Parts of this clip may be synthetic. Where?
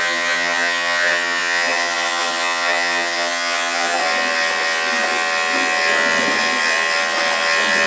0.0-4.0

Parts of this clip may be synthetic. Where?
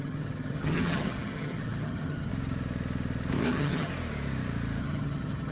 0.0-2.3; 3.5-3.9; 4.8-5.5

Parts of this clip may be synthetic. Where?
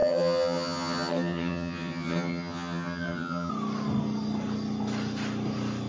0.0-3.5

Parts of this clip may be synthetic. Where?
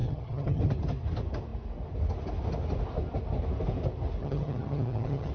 0.0-0.6; 4.2-5.3